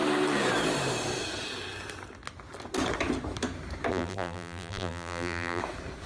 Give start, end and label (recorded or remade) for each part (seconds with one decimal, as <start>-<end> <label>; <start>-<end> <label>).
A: 0.0-3.9 recorded; 3.9-5.6 remade; 5.6-6.1 recorded